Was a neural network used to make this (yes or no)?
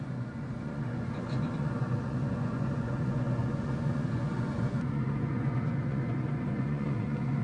yes